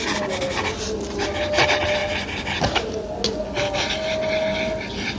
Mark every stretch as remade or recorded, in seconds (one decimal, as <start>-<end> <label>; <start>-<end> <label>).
0.0-5.2 recorded